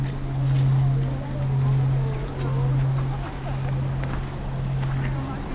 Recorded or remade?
recorded